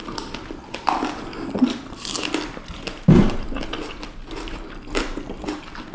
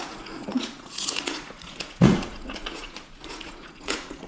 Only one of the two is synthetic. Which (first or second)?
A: second